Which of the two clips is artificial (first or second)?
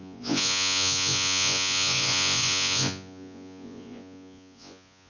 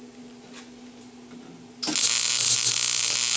first